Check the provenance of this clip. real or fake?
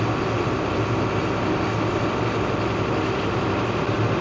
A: real